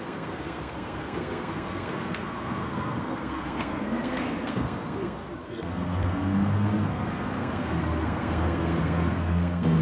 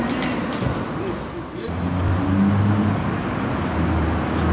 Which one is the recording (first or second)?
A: second